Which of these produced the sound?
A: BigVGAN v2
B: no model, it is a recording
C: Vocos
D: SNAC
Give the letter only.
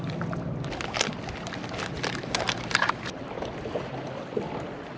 B